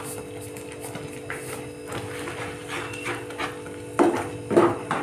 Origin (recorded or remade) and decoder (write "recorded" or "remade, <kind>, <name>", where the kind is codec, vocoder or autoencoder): recorded